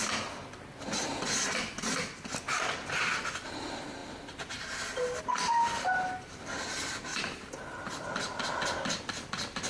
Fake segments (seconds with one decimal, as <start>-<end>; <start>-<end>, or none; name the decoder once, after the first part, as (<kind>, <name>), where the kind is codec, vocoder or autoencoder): none